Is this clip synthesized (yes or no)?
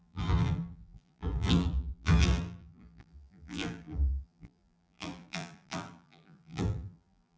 yes